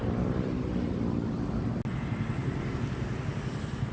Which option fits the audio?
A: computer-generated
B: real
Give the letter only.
B